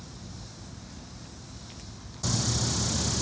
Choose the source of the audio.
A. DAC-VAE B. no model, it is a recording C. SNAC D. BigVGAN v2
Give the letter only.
B